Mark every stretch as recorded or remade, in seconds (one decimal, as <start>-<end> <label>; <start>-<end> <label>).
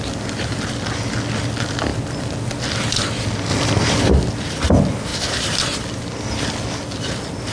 0.0-7.5 recorded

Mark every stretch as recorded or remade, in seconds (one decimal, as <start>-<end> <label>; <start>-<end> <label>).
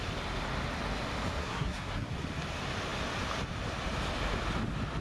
0.0-1.4 recorded; 1.4-2.1 remade; 2.1-5.0 recorded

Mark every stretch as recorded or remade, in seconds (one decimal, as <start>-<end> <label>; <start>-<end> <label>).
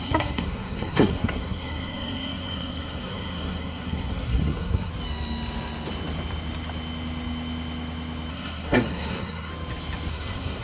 0.0-4.9 remade; 4.9-8.3 recorded; 8.3-9.5 remade; 9.5-10.1 recorded; 10.1-10.6 remade